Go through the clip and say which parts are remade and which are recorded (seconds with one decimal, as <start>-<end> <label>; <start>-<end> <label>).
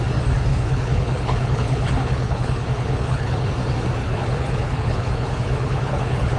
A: 0.0-0.5 recorded; 0.5-3.5 remade; 3.5-4.0 recorded; 4.0-6.4 remade